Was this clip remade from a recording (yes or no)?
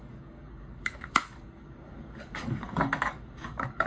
yes